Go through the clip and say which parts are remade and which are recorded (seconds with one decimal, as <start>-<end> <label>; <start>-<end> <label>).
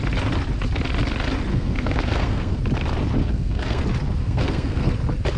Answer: 0.0-1.5 recorded; 1.5-2.6 remade; 2.6-3.2 recorded; 3.2-3.8 remade; 3.8-4.2 recorded; 4.2-4.9 remade; 4.9-5.4 recorded